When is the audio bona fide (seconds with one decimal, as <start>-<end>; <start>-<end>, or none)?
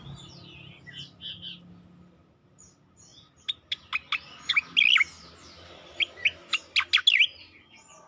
0.0-8.1